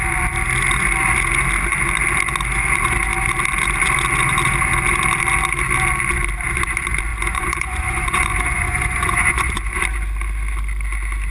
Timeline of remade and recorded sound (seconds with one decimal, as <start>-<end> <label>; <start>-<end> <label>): 0.0-7.1 recorded; 7.1-9.8 remade; 9.8-11.3 recorded